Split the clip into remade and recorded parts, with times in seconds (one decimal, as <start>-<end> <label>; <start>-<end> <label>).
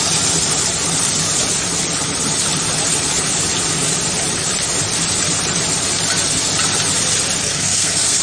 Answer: 0.0-7.4 recorded; 7.4-8.2 remade